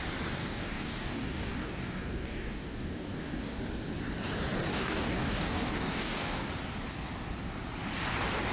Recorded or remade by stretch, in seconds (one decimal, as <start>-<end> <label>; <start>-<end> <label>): 0.0-0.4 recorded; 0.4-3.6 remade; 3.6-4.7 recorded; 4.7-6.5 remade; 6.5-8.5 recorded